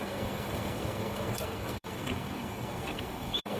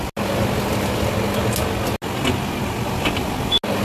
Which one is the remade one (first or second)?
first